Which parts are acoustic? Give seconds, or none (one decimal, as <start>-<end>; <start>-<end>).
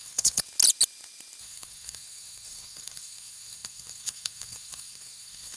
0.4-1.4